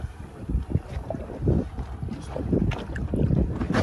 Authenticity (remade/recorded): recorded